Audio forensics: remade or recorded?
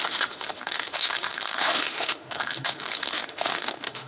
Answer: remade